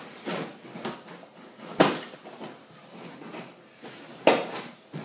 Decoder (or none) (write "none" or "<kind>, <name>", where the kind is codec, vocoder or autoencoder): none